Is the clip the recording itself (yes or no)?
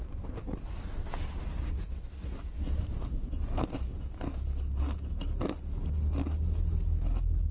yes